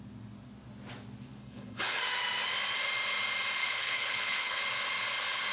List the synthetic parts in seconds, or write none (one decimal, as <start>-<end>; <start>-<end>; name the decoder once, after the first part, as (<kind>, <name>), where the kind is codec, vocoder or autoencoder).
1.4-2.0 (codec, HILCodec); 3.6-4.6

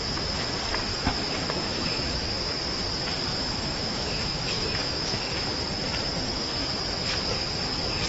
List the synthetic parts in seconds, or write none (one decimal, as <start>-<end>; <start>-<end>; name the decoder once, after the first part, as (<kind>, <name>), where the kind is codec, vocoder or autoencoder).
0.9-2.4 (autoencoder, DAC-VAE); 3.3-5.6

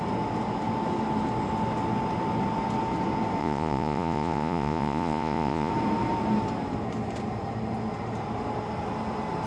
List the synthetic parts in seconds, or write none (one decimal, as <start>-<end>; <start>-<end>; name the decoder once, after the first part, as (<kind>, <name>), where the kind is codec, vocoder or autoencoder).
3.4-5.7 (vocoder, Vocos)

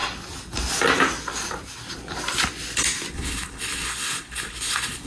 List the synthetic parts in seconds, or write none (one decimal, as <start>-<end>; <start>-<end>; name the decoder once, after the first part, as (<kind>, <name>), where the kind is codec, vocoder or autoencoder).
3.1-5.1 (codec, HILCodec)

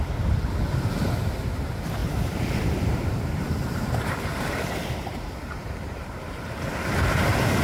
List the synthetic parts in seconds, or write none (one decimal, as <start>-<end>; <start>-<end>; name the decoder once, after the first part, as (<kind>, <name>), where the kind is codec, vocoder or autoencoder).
2.0-6.6 (vocoder, BigVGAN v2)